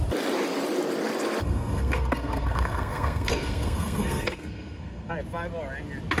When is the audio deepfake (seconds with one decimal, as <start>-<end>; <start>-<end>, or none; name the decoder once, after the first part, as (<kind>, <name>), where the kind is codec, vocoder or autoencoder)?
1.4-5.1 (codec, SNAC)